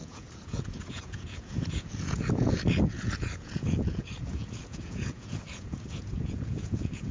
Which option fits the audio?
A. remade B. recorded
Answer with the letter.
A